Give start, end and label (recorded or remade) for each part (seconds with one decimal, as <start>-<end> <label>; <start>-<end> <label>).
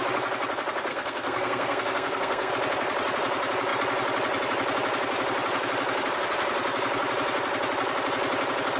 0.0-0.9 recorded; 0.9-2.5 remade; 2.5-8.8 recorded